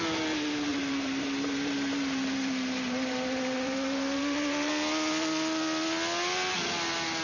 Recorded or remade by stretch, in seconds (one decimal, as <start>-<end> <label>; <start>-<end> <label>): 0.0-0.7 recorded; 0.7-4.7 remade; 4.7-7.2 recorded